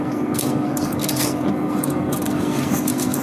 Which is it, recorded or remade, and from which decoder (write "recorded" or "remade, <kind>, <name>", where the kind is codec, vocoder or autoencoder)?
remade, codec, SNAC